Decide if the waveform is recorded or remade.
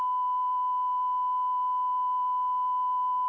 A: recorded